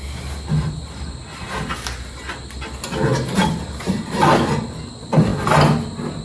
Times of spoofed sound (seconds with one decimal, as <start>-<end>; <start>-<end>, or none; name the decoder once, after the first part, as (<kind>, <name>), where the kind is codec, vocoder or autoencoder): none